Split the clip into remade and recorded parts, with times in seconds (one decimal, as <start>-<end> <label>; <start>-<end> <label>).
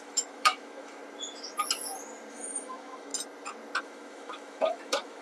0.0-1.0 remade; 1.0-2.3 recorded; 2.3-3.1 remade; 3.1-3.8 recorded; 3.8-5.2 remade